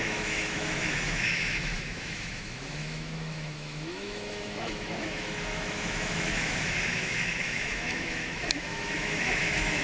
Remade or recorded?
remade